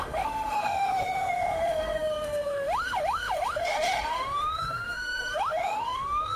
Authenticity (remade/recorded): remade